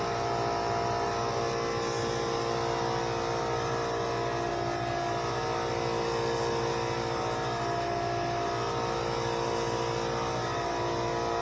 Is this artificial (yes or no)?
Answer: no